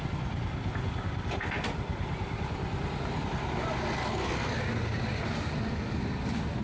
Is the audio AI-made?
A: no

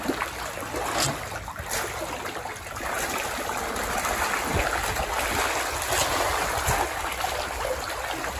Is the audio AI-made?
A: no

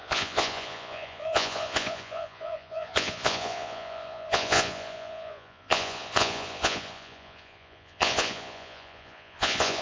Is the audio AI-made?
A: yes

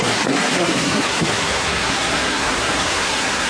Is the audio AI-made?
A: yes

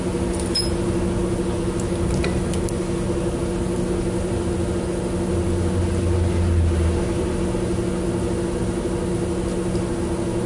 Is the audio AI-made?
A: no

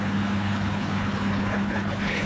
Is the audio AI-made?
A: yes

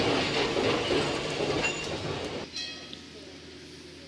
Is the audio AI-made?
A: no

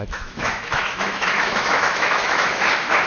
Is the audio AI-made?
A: yes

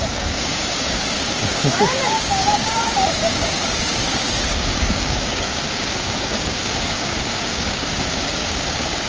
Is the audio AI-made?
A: yes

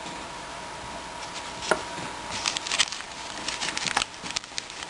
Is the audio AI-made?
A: no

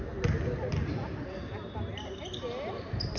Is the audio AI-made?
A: no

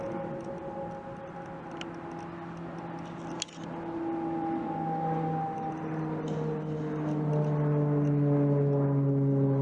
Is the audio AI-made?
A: no